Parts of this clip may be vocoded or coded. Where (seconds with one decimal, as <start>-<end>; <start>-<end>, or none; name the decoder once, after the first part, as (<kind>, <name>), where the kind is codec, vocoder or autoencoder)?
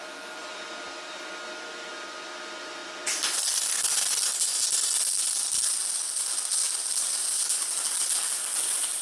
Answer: 6.6-7.2 (vocoder, BigVGAN v2)